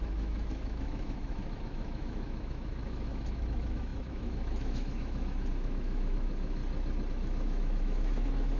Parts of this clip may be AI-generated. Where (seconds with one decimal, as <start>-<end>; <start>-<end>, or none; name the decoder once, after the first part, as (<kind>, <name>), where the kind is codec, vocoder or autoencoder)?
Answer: 0.0-6.6 (autoencoder, DAC-VAE); 7.1-8.6